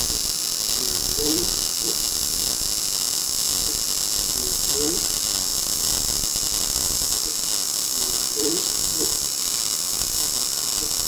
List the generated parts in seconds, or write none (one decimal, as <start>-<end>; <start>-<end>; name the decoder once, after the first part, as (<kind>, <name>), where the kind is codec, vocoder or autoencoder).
none